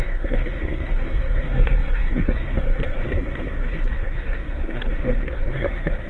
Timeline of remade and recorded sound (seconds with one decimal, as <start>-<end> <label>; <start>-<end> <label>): 0.0-6.1 remade